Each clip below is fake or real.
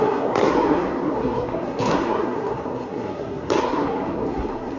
fake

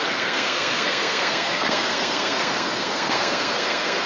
fake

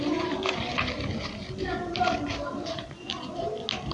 real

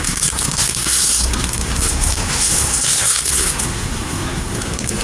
fake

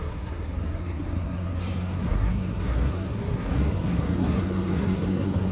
fake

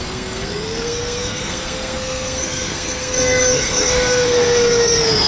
fake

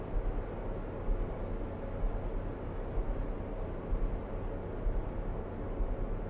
real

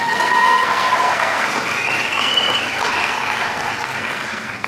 fake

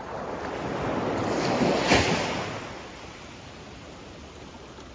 real